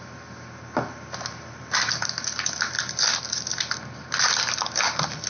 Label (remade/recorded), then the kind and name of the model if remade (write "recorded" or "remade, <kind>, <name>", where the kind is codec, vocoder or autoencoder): recorded